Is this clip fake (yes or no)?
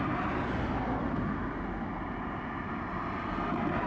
no